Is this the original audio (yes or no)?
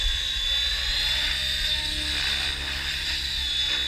yes